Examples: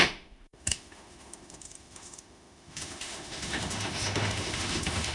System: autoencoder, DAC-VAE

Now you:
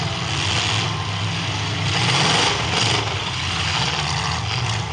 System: none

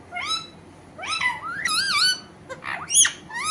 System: none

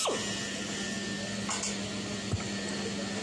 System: none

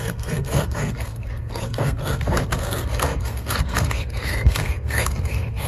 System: codec, SNAC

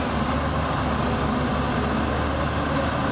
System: none